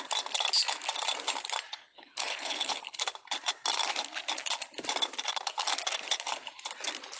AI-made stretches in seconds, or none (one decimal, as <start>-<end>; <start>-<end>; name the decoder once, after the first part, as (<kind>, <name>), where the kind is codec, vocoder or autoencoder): 1.8-3.0 (codec, HILCodec)